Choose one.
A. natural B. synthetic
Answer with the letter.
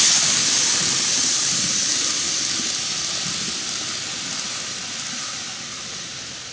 A